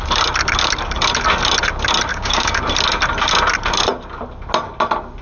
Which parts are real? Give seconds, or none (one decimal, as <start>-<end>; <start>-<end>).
0.0-2.1; 2.6-5.2